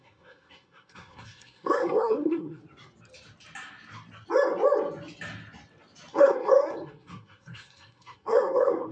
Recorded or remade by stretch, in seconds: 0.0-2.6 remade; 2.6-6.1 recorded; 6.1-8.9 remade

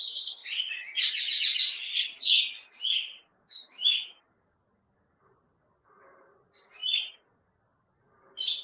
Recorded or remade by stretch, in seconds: 0.0-3.3 recorded; 3.3-4.2 remade; 4.2-8.6 recorded

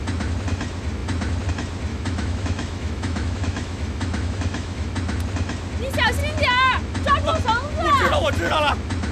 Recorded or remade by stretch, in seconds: 0.0-1.9 recorded; 1.9-4.9 remade; 4.9-9.1 recorded

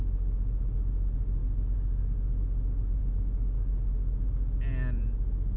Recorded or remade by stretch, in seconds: 0.0-5.6 recorded

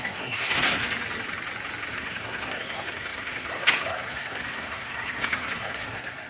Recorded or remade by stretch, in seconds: 0.0-0.8 remade; 0.8-1.9 recorded; 1.9-6.3 remade

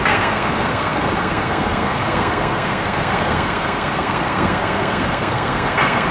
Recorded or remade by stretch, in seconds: 0.0-6.1 remade

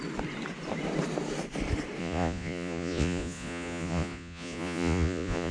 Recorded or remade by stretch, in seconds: 0.0-2.0 recorded; 2.0-5.5 remade